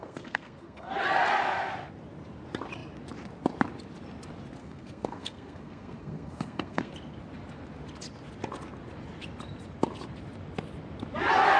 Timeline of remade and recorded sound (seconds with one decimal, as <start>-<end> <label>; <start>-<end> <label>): 0.0-0.9 remade; 0.9-4.6 recorded; 4.6-6.9 remade; 6.9-11.6 recorded